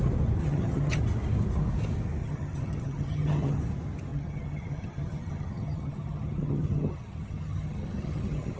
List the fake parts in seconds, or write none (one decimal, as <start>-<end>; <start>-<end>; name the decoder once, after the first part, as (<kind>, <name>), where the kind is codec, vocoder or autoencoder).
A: 0.4-1.0 (vocoder, HiFi-GAN); 2.2-3.6; 4.1-8.6